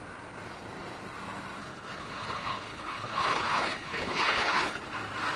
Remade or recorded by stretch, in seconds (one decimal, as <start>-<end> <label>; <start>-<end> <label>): 0.0-1.6 recorded; 1.6-4.8 remade; 4.8-5.4 recorded